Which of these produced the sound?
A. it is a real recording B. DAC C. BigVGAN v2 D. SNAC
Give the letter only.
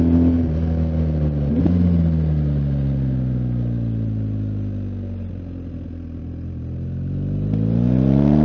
A